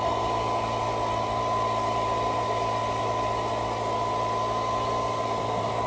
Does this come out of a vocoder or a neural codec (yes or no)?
no